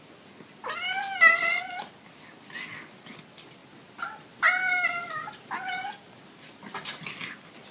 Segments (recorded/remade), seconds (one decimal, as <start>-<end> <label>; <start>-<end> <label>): 0.0-7.7 recorded